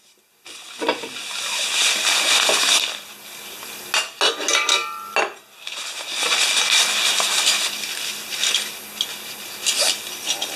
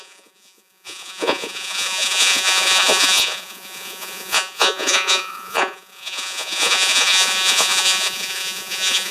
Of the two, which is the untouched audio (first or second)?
first